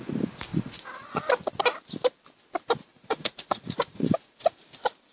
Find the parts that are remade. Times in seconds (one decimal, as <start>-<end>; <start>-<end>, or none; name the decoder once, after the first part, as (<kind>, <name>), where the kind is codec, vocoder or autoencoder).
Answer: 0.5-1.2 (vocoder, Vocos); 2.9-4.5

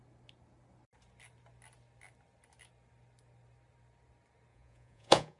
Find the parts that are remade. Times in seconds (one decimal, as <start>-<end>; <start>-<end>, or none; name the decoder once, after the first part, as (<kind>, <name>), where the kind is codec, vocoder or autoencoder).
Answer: 4.5-5.4 (vocoder, Vocos)

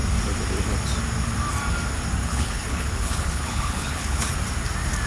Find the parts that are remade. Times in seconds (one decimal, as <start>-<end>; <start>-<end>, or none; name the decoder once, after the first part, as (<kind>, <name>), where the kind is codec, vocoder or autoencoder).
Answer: 2.2-4.3 (codec, HILCodec)

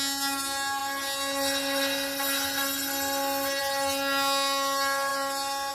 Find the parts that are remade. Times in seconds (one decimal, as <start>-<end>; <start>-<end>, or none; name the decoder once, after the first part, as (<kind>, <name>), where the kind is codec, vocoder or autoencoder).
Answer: none

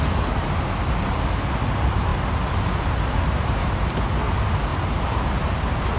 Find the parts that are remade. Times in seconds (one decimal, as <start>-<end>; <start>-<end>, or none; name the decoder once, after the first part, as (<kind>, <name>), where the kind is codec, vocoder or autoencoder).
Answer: none

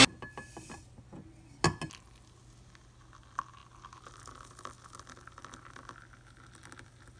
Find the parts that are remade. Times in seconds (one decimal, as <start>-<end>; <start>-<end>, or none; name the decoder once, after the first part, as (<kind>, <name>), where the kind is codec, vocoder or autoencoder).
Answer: none

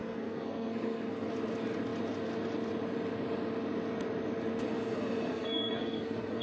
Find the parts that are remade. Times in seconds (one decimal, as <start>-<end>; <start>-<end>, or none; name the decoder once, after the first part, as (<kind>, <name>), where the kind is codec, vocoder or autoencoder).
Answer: 0.0-1.3 (codec, SNAC); 5.3-6.4

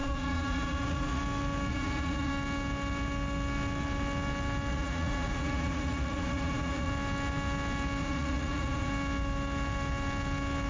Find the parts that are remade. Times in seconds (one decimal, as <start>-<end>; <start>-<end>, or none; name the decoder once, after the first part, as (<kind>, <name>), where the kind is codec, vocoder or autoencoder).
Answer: 0.0-1.2 (vocoder, Vocos); 1.7-2.3; 4.7-6.9; 8.0-8.9